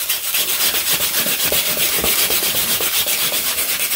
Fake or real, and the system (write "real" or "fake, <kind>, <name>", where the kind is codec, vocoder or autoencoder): fake, vocoder, BigVGAN v2